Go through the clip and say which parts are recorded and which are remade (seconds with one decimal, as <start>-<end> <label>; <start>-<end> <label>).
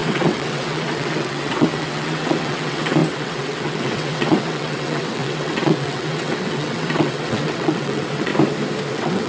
0.0-8.3 remade; 8.3-8.9 recorded; 8.9-9.3 remade